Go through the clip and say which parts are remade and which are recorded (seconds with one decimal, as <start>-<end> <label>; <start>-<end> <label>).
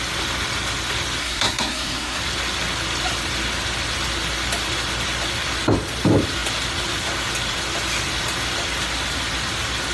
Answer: 0.0-1.2 recorded; 1.2-2.2 remade; 2.2-9.9 recorded